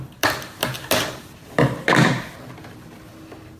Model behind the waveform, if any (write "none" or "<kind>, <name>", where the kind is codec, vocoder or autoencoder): none